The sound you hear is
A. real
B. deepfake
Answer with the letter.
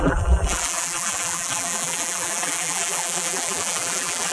B